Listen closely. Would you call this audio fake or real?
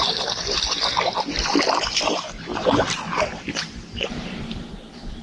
fake